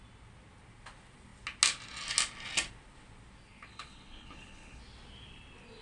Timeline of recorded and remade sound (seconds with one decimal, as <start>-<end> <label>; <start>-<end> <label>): 0.0-3.7 recorded; 3.7-4.8 remade; 4.8-5.8 recorded